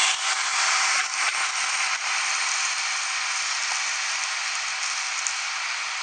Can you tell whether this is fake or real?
real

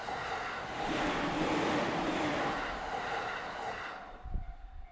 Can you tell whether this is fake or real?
real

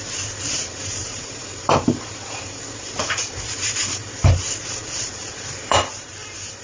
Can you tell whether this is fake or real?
fake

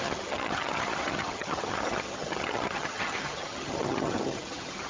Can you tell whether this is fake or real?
fake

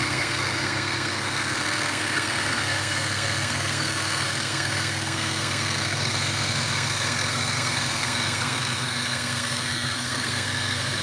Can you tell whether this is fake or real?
fake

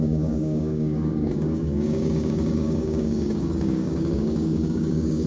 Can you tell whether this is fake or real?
fake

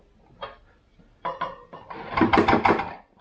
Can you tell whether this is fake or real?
real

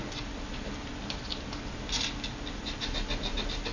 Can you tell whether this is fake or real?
real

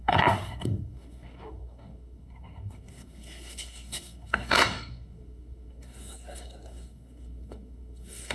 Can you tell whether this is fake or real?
fake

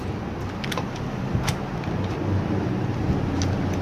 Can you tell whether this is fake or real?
real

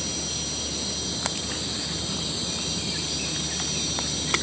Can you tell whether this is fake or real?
real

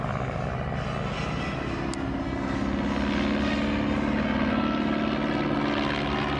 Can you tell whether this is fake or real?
real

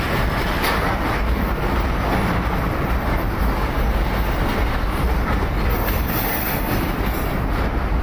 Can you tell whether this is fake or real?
real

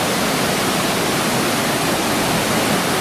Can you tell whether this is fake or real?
real